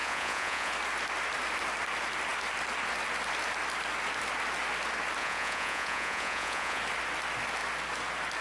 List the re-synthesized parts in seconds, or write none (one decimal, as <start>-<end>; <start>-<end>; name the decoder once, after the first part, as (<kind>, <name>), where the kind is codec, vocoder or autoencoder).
0.0-0.7 (vocoder, Vocos); 5.2-6.8